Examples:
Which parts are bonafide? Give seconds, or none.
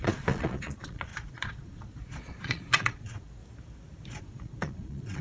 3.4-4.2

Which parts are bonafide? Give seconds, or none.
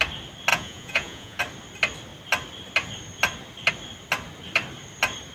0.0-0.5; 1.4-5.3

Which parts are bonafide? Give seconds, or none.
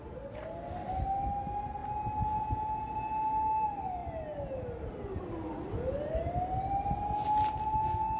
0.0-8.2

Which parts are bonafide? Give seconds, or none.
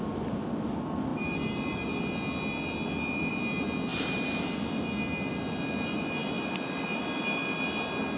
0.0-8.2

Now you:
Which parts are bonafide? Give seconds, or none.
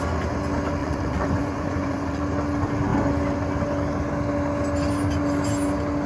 0.0-0.8; 2.2-6.1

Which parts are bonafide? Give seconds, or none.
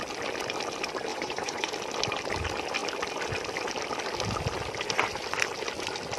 0.0-1.1; 1.7-6.2